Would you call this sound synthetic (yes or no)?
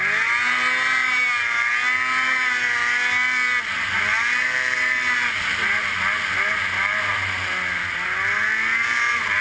no